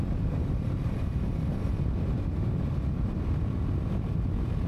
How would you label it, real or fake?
real